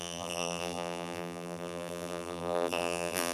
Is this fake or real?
fake